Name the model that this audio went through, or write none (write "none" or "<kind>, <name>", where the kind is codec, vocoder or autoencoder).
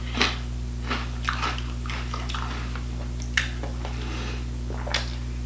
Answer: none